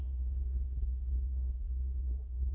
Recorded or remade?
remade